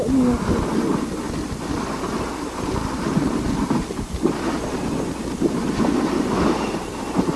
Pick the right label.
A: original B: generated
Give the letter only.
A